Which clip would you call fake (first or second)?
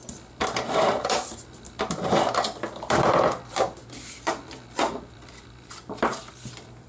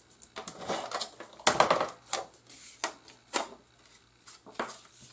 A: first